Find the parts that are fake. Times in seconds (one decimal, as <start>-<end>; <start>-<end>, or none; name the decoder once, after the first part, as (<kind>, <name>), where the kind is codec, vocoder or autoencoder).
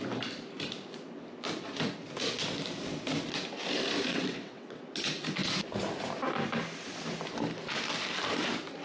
4.1-4.8 (vocoder, WaveNeXt)